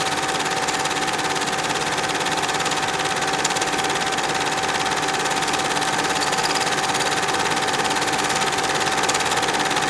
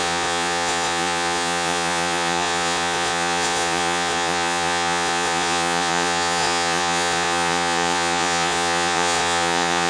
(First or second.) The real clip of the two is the first